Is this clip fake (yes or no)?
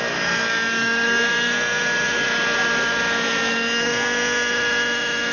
no